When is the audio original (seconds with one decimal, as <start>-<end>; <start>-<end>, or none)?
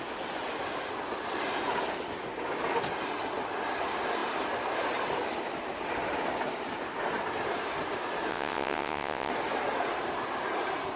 0.0-8.3; 9.3-11.0